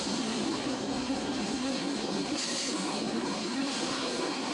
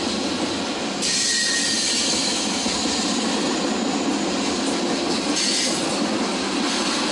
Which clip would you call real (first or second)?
second